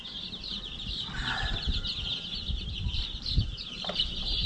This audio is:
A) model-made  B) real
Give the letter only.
A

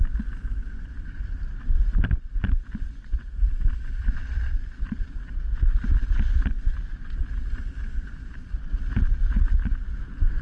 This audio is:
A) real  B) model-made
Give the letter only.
A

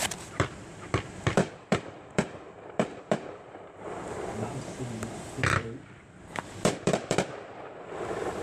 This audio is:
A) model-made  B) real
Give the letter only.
A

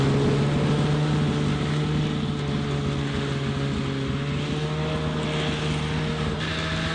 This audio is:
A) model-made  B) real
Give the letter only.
B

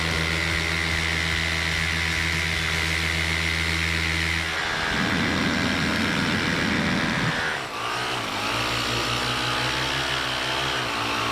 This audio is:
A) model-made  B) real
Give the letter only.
B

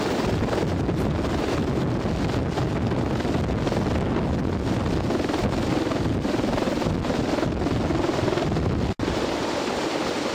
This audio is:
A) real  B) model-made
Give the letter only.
A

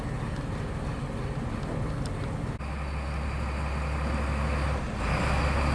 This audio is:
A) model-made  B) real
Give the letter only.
B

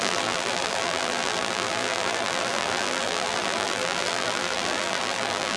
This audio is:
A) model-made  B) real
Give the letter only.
A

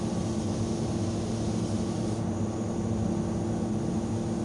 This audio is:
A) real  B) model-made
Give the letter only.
A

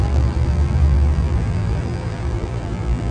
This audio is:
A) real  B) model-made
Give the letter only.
B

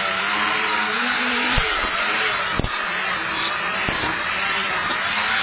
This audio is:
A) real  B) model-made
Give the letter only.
B